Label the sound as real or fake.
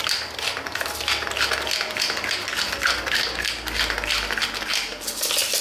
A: real